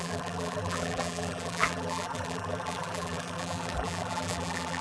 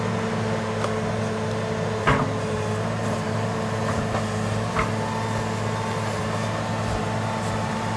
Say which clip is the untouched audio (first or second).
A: second